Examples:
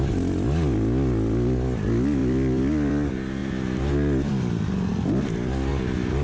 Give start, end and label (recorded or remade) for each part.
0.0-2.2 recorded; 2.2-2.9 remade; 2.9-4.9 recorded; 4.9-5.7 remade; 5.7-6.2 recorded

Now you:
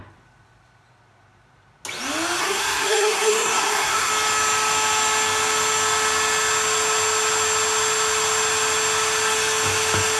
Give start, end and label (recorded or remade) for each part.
0.0-2.4 recorded; 2.4-4.1 remade; 4.1-10.2 recorded